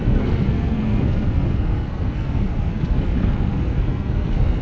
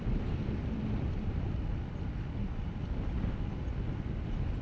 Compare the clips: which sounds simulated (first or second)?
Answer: first